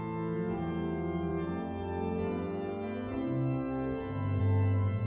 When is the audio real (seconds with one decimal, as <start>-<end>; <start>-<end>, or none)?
0.0-5.1